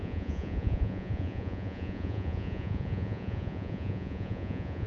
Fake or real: fake